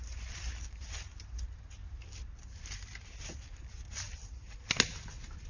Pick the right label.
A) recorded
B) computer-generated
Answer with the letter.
A